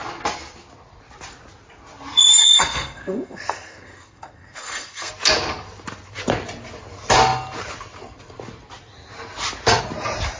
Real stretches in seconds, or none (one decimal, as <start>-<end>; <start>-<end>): 0.0-2.4; 5.1-10.4